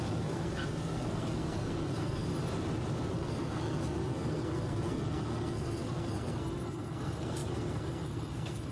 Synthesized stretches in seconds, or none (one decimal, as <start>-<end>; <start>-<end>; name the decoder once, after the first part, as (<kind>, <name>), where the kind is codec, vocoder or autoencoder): 0.0-2.3 (codec, SNAC); 3.1-8.7